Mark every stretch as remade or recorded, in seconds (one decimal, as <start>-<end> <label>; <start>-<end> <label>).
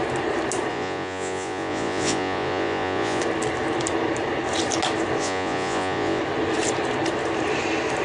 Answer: 0.0-0.7 recorded; 0.7-3.2 remade; 3.2-5.2 recorded; 5.2-6.2 remade; 6.2-8.0 recorded